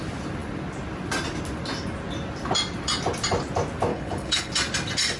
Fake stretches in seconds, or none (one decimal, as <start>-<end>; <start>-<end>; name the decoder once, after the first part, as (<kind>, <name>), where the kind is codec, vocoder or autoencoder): 3.9-4.5 (codec, HILCodec)